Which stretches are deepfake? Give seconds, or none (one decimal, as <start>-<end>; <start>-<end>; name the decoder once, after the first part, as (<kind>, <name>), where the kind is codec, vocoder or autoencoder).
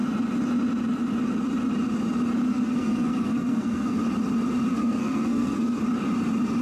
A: 2.5-4.0 (codec, SNAC); 4.7-5.8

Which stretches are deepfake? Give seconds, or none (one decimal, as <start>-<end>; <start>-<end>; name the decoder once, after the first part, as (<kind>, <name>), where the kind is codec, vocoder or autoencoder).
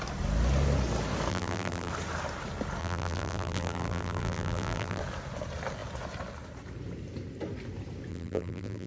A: 1.3-1.9 (vocoder, BigVGAN v2); 2.8-5.0; 8.1-8.9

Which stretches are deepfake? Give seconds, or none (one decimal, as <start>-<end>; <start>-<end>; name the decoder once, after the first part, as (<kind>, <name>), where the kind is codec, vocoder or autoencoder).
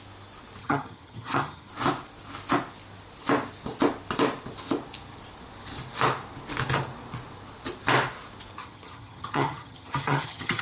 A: 0.6-1.7 (vocoder, HiFi-GAN); 8.6-10.6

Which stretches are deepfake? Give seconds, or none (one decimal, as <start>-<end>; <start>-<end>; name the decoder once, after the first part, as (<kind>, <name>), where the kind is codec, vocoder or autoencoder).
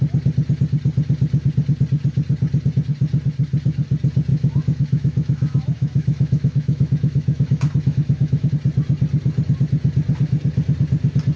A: 4.3-8.5 (autoencoder, DAC-VAE)